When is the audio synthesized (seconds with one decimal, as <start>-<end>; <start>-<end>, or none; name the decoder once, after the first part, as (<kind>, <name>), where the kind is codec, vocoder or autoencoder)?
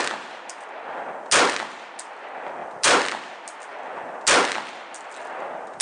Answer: none